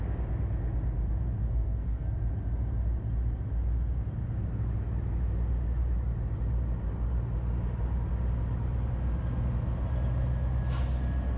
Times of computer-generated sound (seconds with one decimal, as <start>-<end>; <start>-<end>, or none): 1.4-2.1